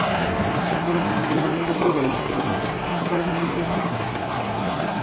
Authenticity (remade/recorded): remade